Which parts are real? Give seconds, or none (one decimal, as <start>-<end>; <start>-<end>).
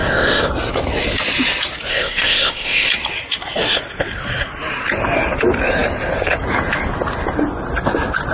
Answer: 0.5-1.9; 2.9-8.3